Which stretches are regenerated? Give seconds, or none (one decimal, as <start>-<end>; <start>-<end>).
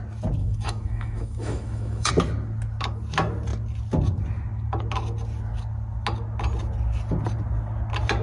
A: 0.4-2.1